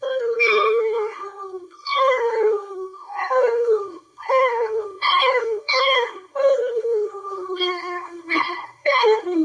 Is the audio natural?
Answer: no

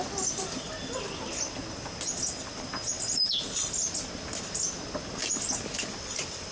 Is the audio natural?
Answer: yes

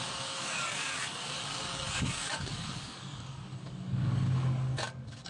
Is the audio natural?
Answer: no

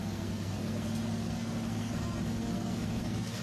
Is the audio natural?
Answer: no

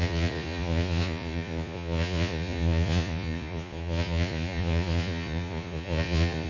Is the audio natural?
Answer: no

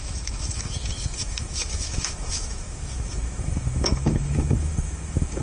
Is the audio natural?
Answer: no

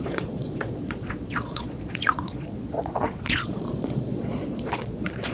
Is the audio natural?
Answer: no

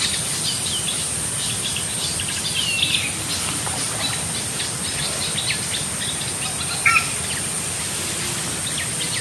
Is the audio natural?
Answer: yes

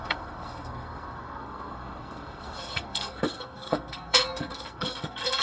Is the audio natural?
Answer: no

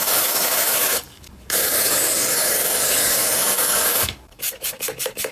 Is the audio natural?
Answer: no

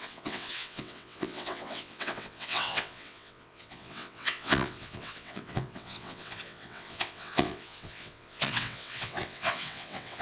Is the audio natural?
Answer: no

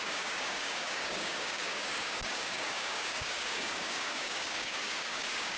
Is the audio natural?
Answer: no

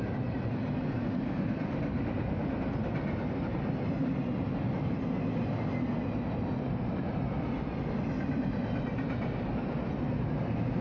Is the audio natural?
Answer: yes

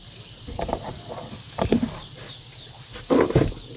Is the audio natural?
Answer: yes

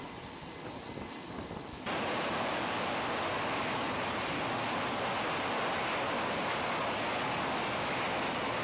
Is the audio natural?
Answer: yes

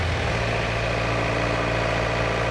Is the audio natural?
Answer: yes